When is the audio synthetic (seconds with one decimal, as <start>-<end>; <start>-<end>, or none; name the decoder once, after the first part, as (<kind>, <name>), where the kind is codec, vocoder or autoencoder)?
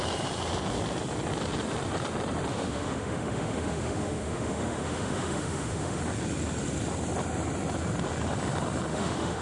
2.5-6.0 (autoencoder, DAC-VAE); 8.9-9.4